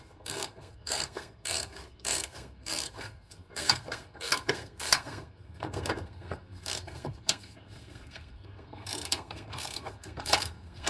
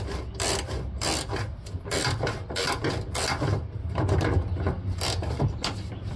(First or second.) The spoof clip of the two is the first